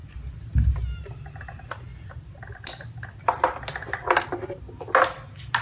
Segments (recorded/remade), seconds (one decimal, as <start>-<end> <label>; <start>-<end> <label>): 0.0-5.6 recorded